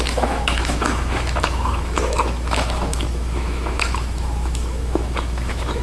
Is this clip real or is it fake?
fake